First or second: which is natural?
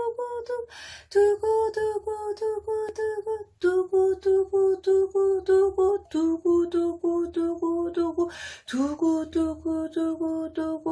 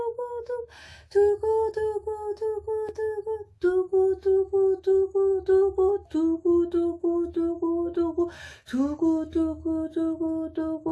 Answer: first